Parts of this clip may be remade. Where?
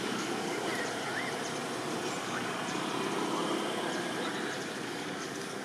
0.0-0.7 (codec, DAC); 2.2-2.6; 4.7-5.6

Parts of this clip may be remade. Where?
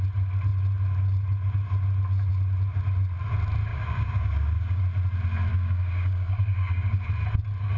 3.7-4.8 (codec, DAC); 5.5-7.0